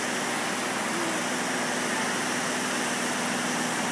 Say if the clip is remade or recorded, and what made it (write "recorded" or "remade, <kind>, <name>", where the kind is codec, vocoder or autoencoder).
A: recorded